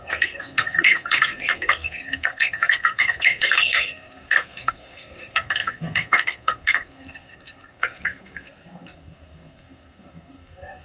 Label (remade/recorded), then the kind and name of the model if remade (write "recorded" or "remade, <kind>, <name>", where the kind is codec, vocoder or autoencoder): remade, codec, SNAC